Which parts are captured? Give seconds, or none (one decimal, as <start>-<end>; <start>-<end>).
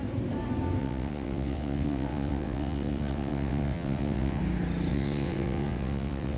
0.0-0.8; 4.4-4.9